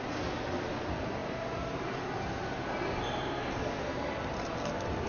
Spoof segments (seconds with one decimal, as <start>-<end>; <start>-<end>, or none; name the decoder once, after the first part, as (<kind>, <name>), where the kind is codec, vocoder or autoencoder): none